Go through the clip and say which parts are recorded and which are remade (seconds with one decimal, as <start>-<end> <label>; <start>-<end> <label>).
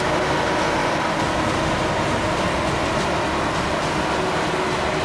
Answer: 0.0-5.0 recorded